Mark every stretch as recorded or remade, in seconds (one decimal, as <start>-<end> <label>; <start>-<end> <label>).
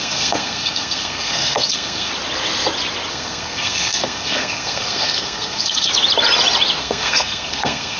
0.0-2.1 remade; 2.1-3.1 recorded; 3.1-5.9 remade; 5.9-6.8 recorded; 6.8-8.0 remade